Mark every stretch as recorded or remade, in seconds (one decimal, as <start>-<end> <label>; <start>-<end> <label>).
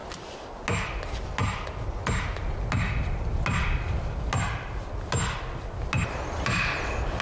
0.0-7.2 recorded